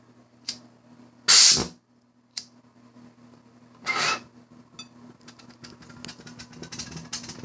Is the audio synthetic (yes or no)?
no